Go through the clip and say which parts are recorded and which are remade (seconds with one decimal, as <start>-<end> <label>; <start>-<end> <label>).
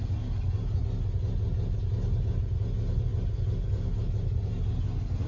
0.0-5.3 recorded